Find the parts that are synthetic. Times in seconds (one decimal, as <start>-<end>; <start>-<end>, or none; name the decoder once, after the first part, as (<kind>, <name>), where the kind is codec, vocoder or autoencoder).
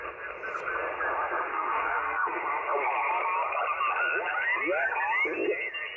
1.5-2.4 (codec, SNAC)